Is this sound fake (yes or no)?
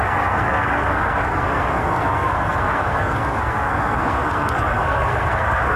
yes